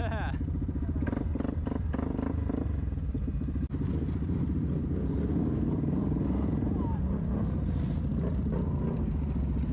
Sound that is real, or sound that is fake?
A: real